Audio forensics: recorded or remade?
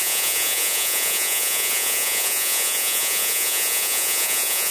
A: remade